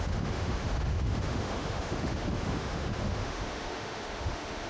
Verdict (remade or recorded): remade